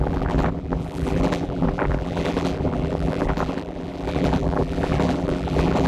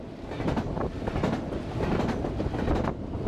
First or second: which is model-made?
first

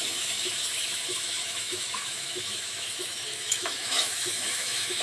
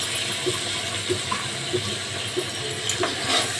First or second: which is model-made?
first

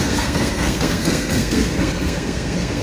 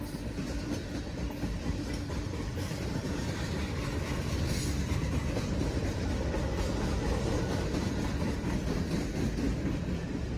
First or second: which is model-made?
first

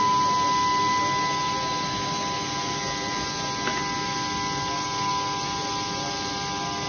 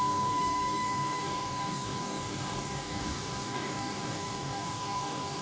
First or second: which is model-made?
second